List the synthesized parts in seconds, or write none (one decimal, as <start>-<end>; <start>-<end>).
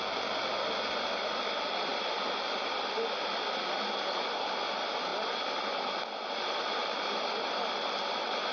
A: none